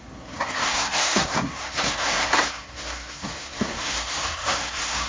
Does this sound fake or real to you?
fake